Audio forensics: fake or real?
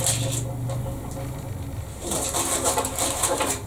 real